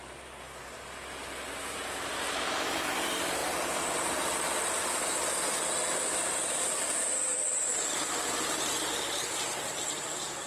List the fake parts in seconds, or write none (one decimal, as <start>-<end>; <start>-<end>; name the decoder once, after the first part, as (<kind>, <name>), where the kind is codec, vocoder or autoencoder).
0.0-3.4 (vocoder, BigVGAN v2); 5.7-10.5